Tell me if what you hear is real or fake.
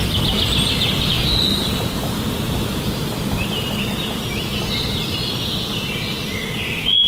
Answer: real